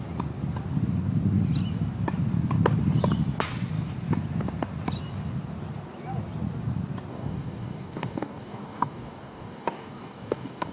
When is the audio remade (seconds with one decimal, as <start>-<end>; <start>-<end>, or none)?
7.1-10.7